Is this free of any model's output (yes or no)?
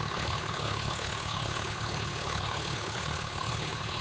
no